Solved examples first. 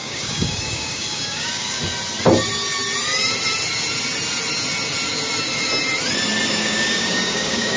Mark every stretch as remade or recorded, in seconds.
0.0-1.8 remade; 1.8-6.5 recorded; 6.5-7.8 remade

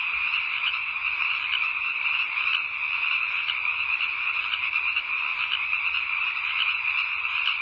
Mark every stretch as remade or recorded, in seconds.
0.0-2.5 remade; 2.5-3.1 recorded; 3.1-7.6 remade

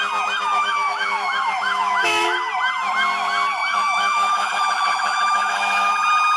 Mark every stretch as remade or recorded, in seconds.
0.0-0.6 recorded; 0.6-2.5 remade; 2.5-3.6 recorded; 3.6-5.9 remade; 5.9-6.4 recorded

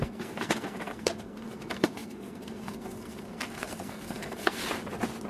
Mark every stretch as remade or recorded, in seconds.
0.0-4.6 remade; 4.6-5.3 recorded

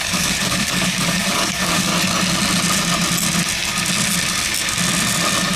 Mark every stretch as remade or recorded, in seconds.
0.0-1.9 remade; 1.9-5.6 recorded

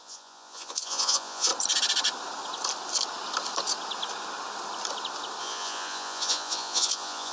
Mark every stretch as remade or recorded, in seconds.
0.0-1.5 remade; 1.5-5.4 recorded; 5.4-7.3 remade

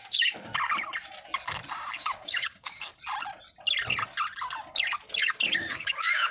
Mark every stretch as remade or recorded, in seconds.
0.0-0.5 remade; 0.5-2.0 recorded; 2.0-2.9 remade; 2.9-5.2 recorded; 5.2-6.3 remade